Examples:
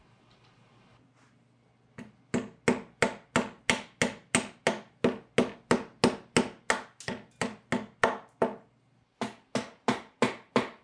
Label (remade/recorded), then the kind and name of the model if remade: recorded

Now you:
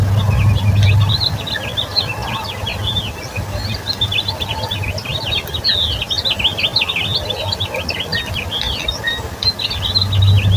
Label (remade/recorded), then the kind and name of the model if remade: recorded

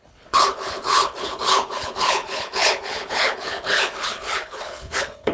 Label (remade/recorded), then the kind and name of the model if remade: remade, codec, HILCodec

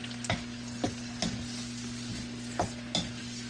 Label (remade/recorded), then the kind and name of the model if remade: recorded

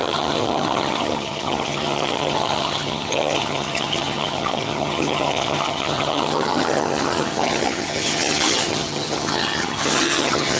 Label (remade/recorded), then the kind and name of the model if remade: remade, vocoder, HiFi-GAN